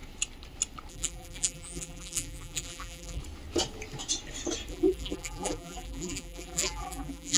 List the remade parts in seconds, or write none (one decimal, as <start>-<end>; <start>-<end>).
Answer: 0.9-3.2; 4.7-7.4